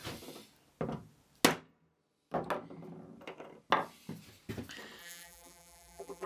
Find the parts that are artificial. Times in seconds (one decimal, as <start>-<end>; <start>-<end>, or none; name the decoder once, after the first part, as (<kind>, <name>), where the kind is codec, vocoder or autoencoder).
5.0-6.3 (vocoder, BigVGAN v2)